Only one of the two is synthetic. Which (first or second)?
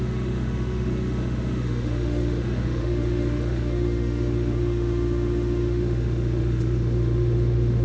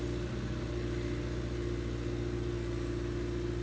first